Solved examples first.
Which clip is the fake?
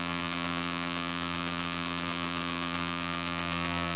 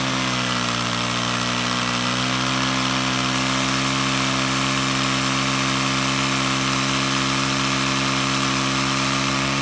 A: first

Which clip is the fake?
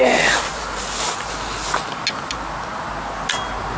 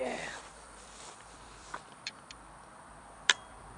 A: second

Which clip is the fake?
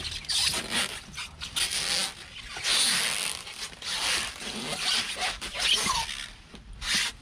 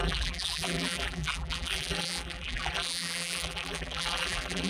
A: second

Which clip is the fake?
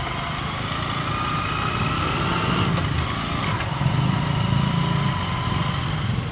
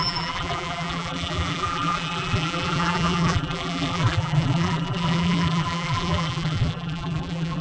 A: second